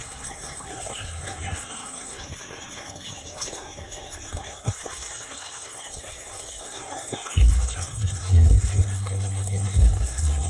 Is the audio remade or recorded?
remade